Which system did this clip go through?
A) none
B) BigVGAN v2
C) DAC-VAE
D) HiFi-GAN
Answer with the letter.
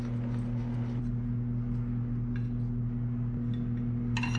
A